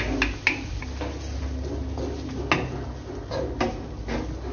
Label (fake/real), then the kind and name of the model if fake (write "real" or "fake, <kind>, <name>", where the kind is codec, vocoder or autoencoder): real